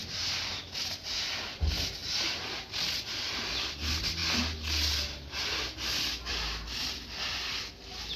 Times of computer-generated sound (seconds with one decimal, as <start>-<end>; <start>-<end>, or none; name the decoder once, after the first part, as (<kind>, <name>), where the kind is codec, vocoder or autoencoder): none